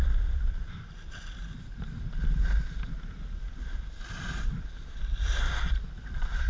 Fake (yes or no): no